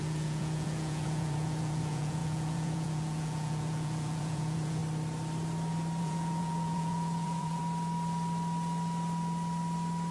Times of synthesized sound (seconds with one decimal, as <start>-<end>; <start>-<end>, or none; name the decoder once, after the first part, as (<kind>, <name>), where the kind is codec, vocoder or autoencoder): 0.0-4.8 (vocoder, Vocos); 6.0-7.6